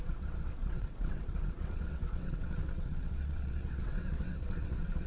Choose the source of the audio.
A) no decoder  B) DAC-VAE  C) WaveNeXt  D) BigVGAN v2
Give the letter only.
C